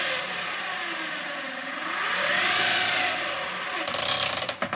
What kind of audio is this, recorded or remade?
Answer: recorded